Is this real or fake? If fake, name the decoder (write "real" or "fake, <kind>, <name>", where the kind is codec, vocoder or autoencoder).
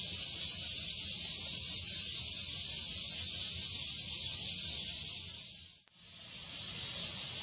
real